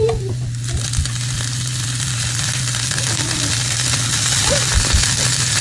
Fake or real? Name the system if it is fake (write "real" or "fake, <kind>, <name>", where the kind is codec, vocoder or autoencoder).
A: real